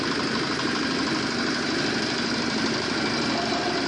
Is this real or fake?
real